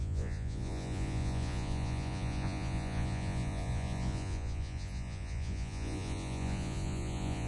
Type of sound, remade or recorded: remade